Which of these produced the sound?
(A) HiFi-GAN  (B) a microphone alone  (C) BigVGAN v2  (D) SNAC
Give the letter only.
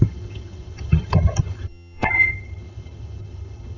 A